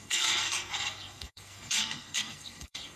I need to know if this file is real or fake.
fake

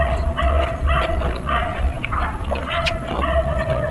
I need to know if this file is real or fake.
fake